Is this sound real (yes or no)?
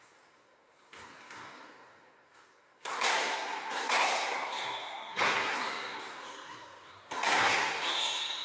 no